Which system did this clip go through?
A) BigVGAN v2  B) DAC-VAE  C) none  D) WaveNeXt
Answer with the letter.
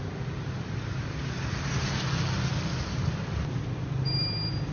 C